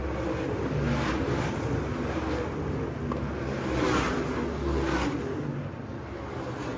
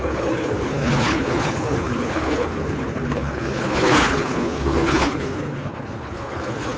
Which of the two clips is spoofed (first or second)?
second